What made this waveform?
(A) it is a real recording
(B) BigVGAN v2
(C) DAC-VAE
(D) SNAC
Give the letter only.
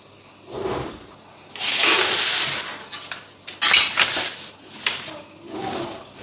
A